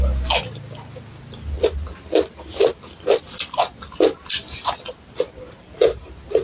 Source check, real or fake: real